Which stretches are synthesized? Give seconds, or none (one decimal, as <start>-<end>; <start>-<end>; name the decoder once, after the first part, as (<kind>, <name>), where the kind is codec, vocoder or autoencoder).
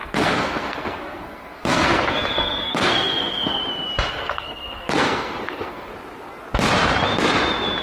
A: 0.0-3.6 (codec, SNAC); 4.1-5.9